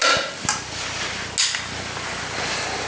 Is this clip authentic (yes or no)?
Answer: yes